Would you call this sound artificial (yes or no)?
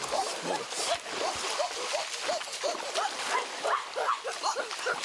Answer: no